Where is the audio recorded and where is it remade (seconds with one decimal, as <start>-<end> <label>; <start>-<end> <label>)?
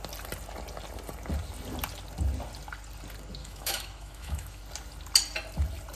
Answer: 0.0-3.4 recorded; 3.4-4.6 remade; 4.6-6.0 recorded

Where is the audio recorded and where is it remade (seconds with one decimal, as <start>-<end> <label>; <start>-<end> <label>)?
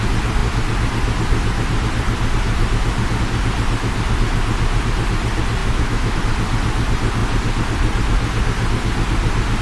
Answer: 0.0-5.6 recorded; 5.6-6.2 remade; 6.2-9.6 recorded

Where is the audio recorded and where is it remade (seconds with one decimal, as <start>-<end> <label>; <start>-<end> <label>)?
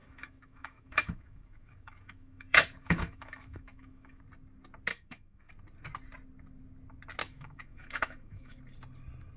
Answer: 0.0-4.2 remade; 4.2-4.9 recorded; 4.9-5.5 remade; 5.5-7.2 recorded; 7.2-8.6 remade; 8.6-9.4 recorded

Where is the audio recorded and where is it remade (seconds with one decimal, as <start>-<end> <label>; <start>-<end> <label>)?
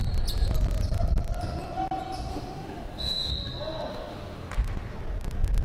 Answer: 0.0-2.3 recorded; 2.3-3.3 remade; 3.3-3.9 recorded; 3.9-4.5 remade; 4.5-5.6 recorded